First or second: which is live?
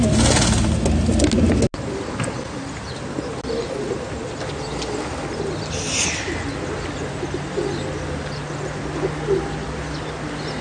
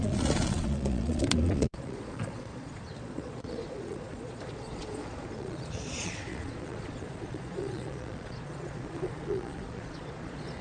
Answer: first